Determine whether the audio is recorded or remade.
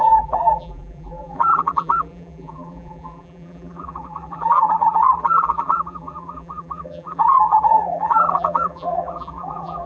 remade